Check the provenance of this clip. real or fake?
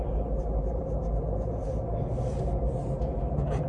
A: fake